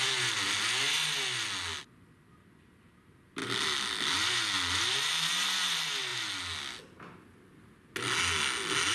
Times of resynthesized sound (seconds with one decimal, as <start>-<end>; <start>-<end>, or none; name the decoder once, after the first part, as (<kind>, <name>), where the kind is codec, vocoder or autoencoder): none